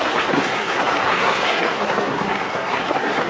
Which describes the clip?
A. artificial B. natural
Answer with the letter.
A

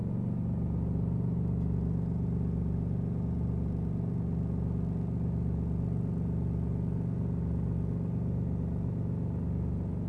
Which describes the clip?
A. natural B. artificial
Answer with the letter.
A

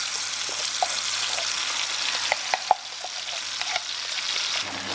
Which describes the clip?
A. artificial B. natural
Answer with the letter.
B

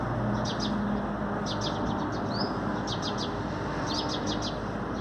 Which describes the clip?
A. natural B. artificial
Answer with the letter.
A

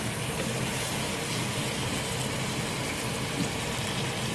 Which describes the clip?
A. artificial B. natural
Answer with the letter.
B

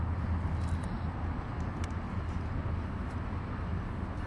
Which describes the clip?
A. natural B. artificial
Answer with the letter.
A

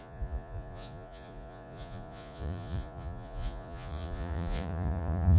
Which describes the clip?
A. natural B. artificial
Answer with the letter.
B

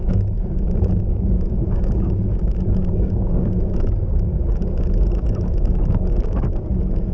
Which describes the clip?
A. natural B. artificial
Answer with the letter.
B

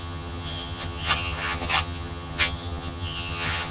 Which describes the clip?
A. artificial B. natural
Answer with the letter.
A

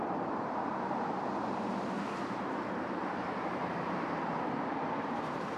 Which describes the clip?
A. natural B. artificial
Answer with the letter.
B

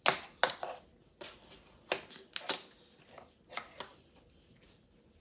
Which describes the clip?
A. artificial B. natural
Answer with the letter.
B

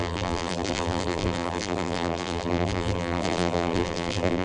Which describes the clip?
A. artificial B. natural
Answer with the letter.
A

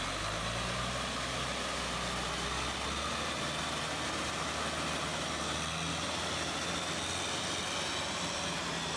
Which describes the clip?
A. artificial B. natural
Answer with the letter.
B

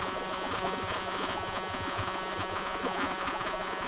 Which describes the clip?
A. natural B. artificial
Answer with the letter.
B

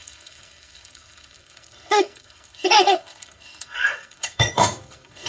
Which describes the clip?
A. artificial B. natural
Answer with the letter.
A